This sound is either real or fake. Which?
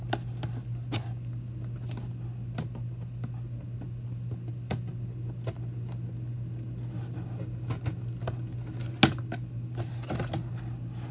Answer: real